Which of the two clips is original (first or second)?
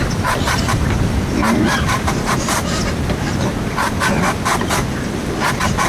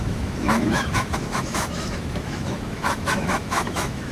first